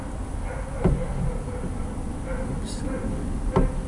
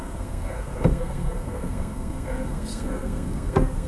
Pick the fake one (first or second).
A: second